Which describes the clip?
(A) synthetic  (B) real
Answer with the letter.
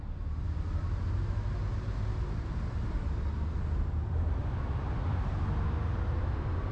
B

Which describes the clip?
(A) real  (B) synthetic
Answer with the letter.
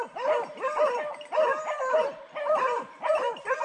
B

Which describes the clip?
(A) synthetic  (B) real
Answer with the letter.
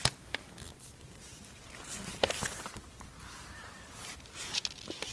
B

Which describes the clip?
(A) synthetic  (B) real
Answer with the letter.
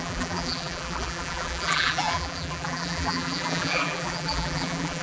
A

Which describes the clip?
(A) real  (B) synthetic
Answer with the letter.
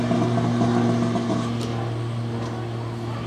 A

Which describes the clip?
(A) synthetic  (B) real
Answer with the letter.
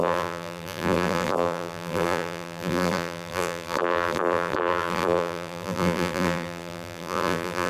A